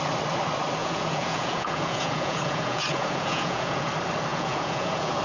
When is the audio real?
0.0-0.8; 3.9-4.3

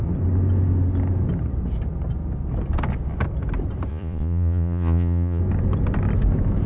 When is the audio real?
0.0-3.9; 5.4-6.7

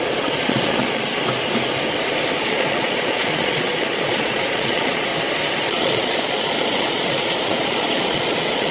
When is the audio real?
1.1-2.4; 5.1-5.7

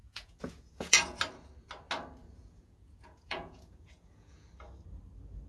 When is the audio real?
1.2-2.2; 4.5-5.5

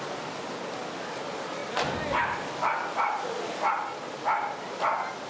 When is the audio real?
0.0-5.3

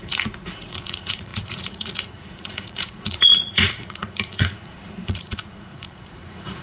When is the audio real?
none

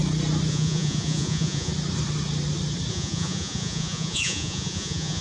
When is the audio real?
0.0-0.5; 1.7-2.9

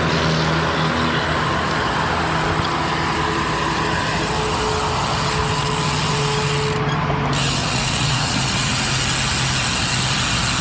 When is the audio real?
0.0-7.6; 8.9-10.6